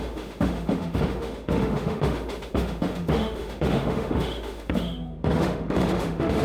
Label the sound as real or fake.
fake